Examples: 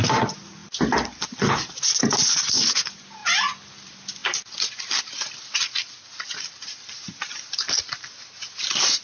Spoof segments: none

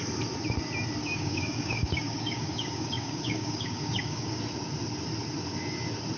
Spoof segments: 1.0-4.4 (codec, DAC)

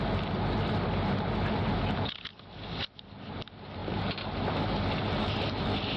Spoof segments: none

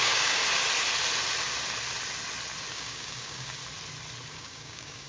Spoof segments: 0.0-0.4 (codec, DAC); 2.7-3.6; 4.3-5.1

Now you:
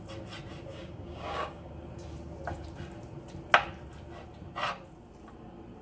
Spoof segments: 0.7-1.7 (codec, DAC)